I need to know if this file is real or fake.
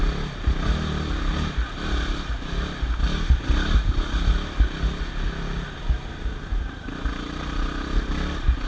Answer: real